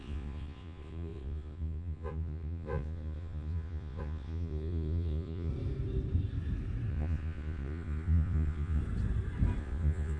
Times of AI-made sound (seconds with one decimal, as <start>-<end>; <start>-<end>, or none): 0.0-5.5; 6.9-8.8; 9.6-10.2

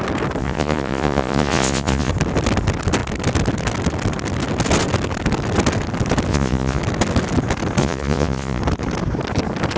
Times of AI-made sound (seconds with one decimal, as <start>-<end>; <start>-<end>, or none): 0.4-2.1; 6.3-6.8; 7.8-8.6

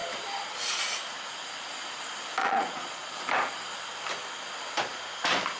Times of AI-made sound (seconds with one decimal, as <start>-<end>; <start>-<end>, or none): 2.4-3.2

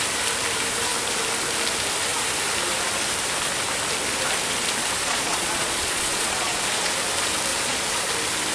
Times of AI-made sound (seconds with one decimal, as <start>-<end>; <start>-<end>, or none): 5.0-6.9; 7.5-8.1

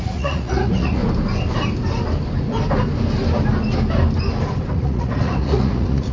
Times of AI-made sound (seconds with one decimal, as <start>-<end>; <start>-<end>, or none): 0.0-1.0; 4.7-6.1

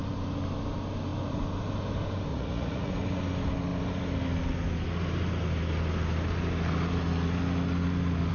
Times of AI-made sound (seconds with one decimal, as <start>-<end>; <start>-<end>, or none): 2.3-2.9

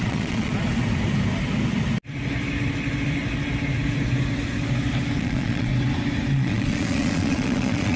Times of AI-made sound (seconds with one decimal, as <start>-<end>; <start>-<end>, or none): 0.0-0.5; 5.2-5.7; 6.3-8.0

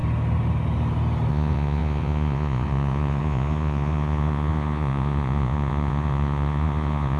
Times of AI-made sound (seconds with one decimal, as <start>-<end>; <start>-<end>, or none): 1.3-7.2